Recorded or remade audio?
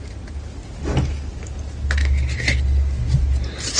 recorded